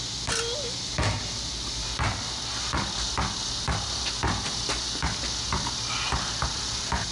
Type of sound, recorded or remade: recorded